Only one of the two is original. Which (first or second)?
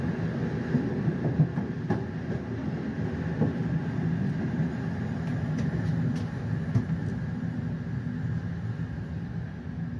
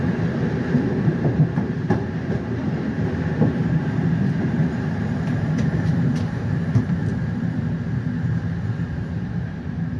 first